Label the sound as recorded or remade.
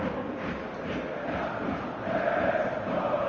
recorded